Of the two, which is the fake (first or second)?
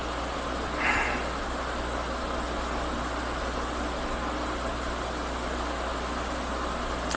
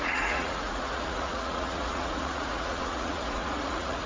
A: second